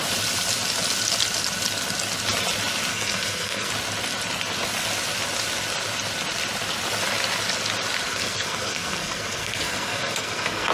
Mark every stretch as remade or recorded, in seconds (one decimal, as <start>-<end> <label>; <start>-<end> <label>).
0.0-2.9 recorded; 2.9-3.7 remade; 3.7-8.1 recorded; 8.1-10.7 remade